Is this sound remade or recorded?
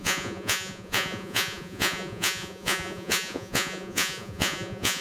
remade